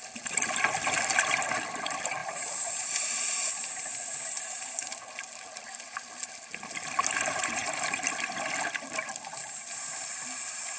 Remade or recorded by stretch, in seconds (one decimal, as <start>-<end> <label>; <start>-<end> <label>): 0.0-2.2 recorded; 2.2-4.6 remade; 4.6-10.8 recorded